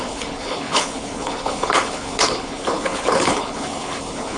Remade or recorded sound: remade